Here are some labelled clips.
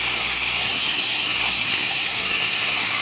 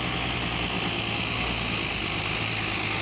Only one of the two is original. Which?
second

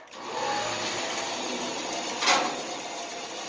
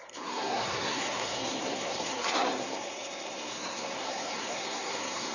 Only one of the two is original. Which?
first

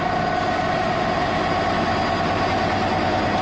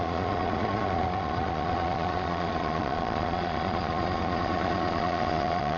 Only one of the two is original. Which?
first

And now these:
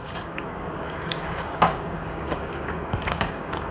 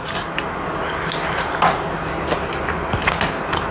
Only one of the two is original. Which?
second